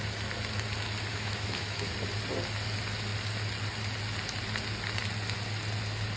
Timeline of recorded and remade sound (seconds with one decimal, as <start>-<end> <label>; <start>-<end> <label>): 0.0-1.1 recorded; 1.1-1.9 remade; 1.9-6.2 recorded